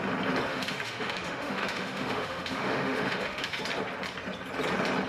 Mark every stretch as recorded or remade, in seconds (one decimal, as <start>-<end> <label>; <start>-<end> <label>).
0.0-0.5 recorded; 0.5-3.6 remade; 3.6-5.1 recorded